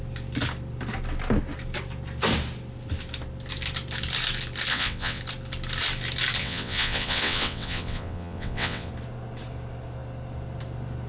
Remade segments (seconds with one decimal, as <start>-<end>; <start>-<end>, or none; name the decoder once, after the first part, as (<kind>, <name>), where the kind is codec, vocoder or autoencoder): 4.7-5.2 (vocoder, WaveNeXt); 6.4-8.9